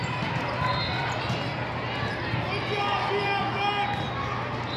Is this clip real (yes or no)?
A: yes